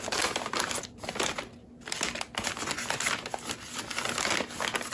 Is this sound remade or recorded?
recorded